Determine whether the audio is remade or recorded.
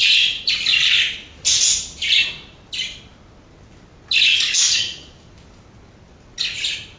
recorded